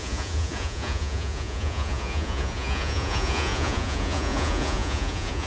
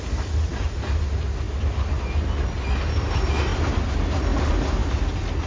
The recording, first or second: second